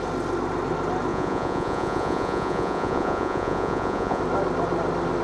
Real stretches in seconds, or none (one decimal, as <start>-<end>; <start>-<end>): 0.0-1.1; 4.2-5.2